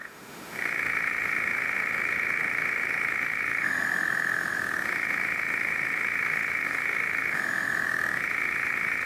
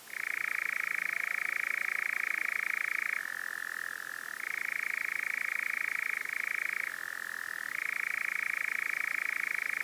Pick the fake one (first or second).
first